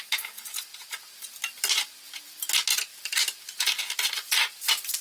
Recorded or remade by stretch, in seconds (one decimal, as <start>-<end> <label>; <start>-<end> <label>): 0.0-0.7 recorded; 0.7-2.2 remade; 2.2-2.9 recorded; 2.9-5.0 remade